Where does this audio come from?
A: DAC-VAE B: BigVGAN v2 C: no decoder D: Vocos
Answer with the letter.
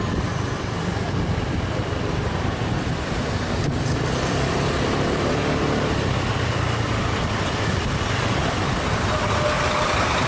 B